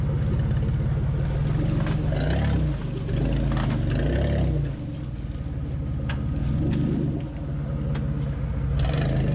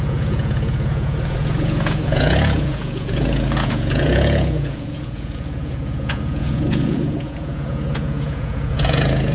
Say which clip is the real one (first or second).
first